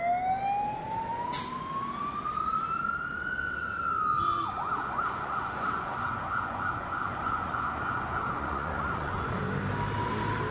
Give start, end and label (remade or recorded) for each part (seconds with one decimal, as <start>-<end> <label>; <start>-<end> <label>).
0.0-4.3 recorded; 4.3-9.4 remade; 9.4-10.5 recorded